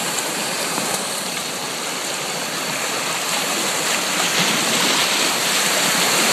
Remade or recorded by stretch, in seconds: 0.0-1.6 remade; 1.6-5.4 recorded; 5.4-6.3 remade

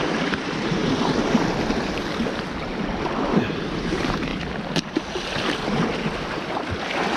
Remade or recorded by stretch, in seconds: 0.0-0.8 remade; 0.8-3.7 recorded; 3.7-4.3 remade; 4.3-7.2 recorded